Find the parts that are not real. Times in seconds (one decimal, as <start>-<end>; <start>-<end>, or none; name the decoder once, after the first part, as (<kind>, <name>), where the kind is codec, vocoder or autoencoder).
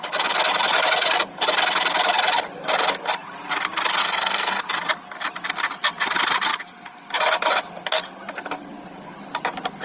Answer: 4.0-4.6 (codec, SNAC)